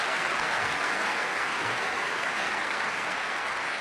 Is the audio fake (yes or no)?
yes